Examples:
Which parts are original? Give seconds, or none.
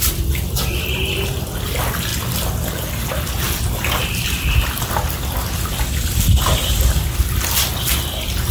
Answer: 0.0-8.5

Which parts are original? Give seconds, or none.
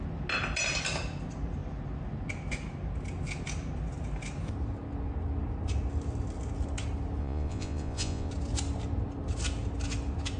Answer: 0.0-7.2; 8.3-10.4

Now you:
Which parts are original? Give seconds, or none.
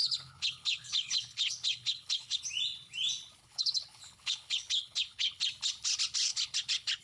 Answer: 2.4-3.4; 5.4-6.3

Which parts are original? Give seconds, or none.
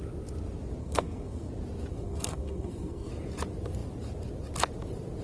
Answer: 0.0-0.8; 1.5-1.9; 3.1-5.2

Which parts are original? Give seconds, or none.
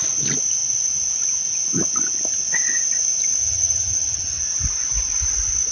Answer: 0.0-3.4; 4.4-5.7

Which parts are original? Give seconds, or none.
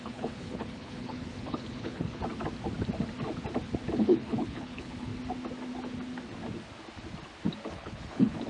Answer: 2.2-4.0; 5.1-7.7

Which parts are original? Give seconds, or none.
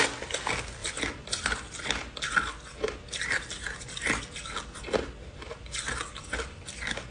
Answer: 0.0-7.1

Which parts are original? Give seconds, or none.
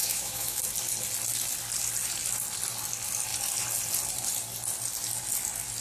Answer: 0.6-5.8